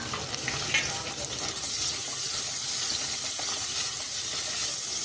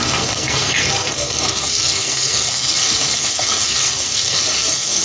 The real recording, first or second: first